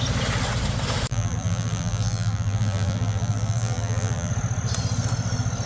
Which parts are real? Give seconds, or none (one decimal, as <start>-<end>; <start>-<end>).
0.0-1.1; 4.3-5.7